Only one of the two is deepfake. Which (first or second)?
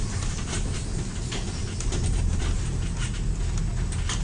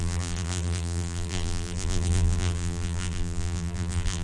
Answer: second